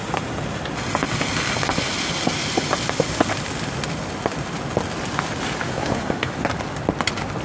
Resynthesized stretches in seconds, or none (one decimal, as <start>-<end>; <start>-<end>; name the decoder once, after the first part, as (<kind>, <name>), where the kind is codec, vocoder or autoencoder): 5.7-6.3 (codec, SNAC)